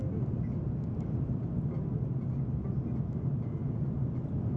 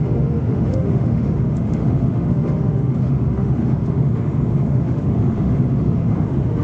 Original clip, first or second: first